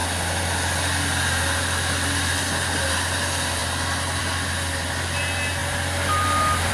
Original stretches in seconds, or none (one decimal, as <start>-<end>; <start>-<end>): 0.0-6.7